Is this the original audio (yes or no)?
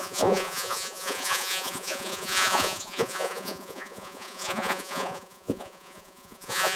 no